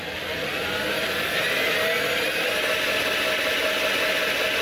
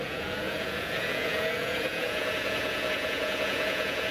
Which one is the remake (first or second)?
second